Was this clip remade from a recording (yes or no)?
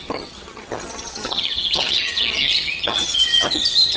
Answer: yes